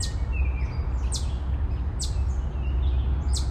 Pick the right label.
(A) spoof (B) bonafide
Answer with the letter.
B